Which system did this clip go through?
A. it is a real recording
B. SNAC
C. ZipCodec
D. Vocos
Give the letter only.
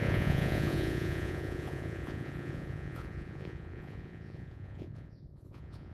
D